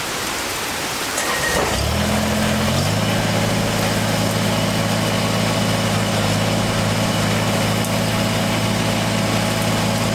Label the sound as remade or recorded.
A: recorded